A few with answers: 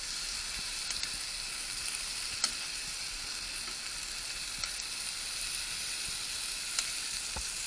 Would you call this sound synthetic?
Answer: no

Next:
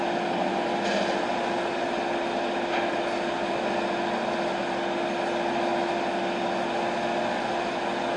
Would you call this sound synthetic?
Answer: no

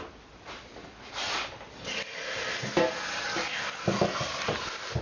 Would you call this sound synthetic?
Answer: no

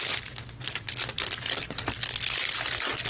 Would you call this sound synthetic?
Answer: no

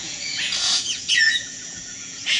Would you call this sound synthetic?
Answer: yes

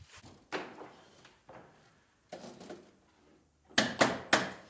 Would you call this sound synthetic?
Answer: no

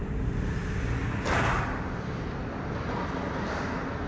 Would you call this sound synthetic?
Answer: no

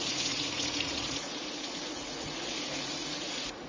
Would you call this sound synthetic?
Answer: yes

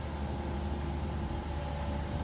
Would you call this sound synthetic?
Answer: no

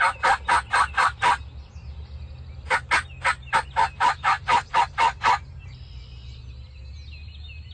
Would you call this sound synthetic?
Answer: no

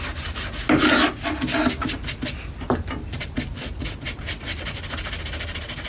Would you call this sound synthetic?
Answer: no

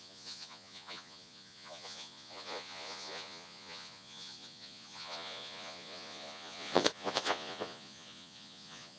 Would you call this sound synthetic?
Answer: yes